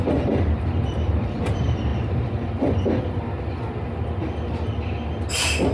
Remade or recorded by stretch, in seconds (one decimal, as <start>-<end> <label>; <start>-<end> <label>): 0.0-1.9 remade; 1.9-5.3 recorded; 5.3-5.7 remade

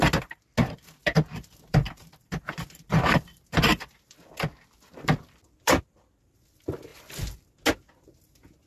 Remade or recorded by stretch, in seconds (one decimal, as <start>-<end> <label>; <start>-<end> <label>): 0.0-1.0 recorded; 1.0-5.8 remade; 5.8-8.7 recorded

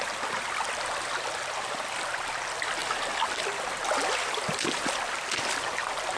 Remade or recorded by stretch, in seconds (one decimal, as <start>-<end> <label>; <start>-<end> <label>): 0.0-6.2 recorded

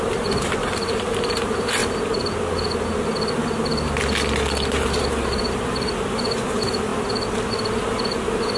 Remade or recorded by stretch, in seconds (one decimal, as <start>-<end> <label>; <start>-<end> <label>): 0.0-1.8 remade; 1.8-5.0 recorded; 5.0-6.9 remade; 6.9-7.5 recorded; 7.5-8.6 remade

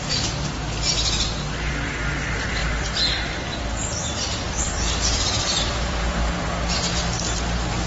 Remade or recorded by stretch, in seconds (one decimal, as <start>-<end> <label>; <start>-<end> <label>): 0.0-2.6 recorded; 2.6-6.1 remade; 6.1-7.9 recorded

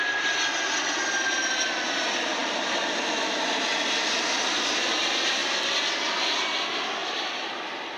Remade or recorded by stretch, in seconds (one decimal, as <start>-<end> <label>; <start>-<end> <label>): 0.0-2.4 recorded; 2.4-2.9 remade; 2.9-3.7 recorded; 3.7-4.9 remade; 4.9-7.0 recorded; 7.0-8.0 remade